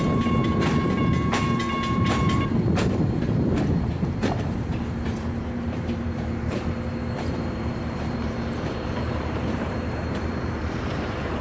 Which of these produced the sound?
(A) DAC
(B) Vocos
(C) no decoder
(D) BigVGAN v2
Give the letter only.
D